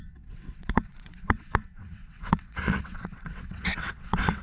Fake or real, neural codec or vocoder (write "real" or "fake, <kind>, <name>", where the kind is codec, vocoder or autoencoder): fake, vocoder, WaveNeXt